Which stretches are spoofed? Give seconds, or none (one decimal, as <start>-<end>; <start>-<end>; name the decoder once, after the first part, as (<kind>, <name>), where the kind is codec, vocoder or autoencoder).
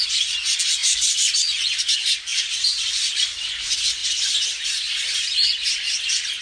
0.8-1.8 (vocoder, BigVGAN v2)